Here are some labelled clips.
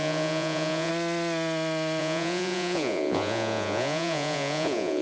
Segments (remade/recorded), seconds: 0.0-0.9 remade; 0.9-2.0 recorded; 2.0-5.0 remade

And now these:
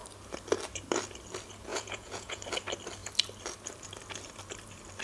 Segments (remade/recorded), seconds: 0.0-1.7 recorded; 1.7-2.4 remade; 2.4-5.0 recorded

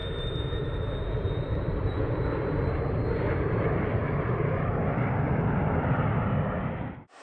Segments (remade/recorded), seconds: 0.0-4.3 remade; 4.3-7.2 recorded

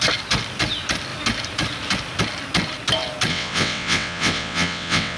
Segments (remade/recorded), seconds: 0.0-3.3 recorded; 3.3-5.2 remade

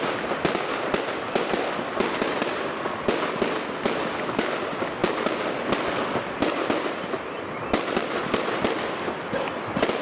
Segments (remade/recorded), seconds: 0.0-10.0 recorded